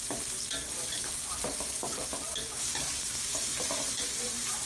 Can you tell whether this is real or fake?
fake